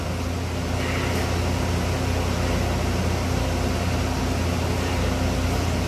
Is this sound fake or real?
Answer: real